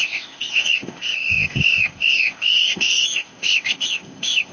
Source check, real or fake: fake